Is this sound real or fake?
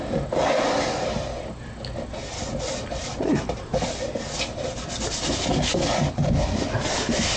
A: real